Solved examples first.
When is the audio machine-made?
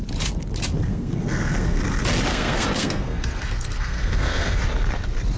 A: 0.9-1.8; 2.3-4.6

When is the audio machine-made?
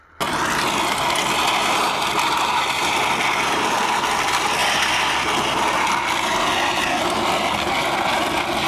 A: none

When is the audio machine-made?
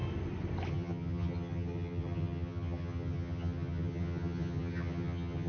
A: 0.7-5.5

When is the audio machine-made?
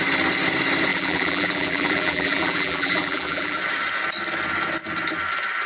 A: 0.9-3.6